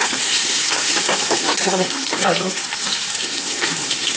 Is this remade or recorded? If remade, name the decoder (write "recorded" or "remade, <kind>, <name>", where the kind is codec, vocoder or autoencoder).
remade, codec, SNAC